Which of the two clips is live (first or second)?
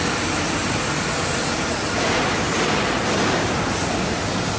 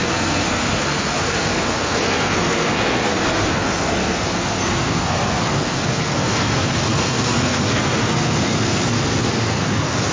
first